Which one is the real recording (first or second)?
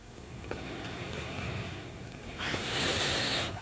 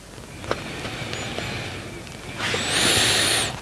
second